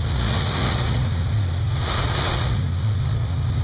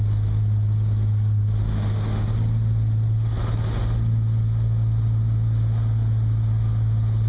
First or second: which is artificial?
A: first